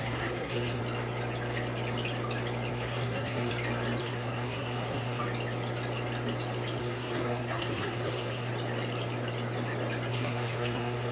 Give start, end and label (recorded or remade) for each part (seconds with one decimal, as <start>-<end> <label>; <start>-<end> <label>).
0.0-0.8 remade; 0.8-2.7 recorded; 2.7-3.5 remade; 3.5-4.0 recorded; 4.0-5.2 remade; 5.2-6.8 recorded; 6.8-8.5 remade; 8.5-10.1 recorded; 10.1-11.1 remade